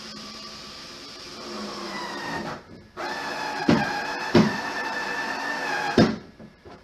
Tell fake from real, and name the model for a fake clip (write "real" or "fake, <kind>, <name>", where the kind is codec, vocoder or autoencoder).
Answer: fake, vocoder, BigVGAN v2